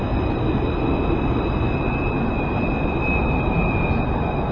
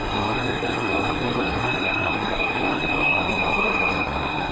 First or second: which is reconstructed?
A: second